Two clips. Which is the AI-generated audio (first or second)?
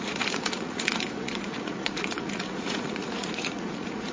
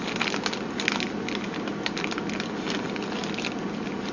first